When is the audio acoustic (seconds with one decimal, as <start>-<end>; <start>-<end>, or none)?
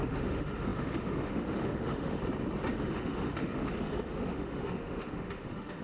2.2-2.8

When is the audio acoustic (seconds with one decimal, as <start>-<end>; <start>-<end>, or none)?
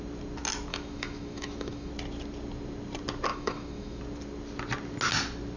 0.0-0.7; 1.9-3.3; 4.0-5.6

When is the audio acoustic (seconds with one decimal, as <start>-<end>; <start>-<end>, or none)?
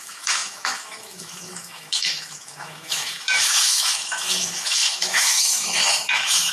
none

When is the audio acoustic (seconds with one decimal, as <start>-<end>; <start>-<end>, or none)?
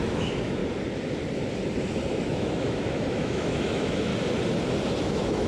0.6-2.1; 4.1-5.0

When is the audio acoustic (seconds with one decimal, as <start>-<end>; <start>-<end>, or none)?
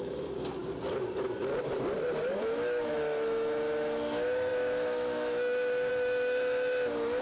0.6-2.4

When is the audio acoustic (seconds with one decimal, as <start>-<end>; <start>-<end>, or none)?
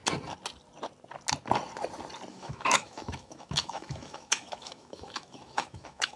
0.0-2.3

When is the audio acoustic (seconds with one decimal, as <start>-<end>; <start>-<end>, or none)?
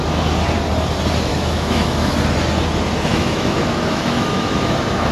0.0-1.3; 2.1-3.1